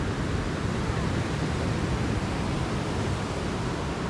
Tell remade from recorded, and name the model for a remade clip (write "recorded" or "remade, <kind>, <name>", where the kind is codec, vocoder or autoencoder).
remade, vocoder, BigVGAN v2